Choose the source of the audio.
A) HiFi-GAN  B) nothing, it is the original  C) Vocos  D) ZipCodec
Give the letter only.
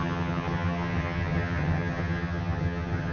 A